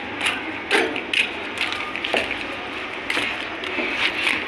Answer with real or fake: real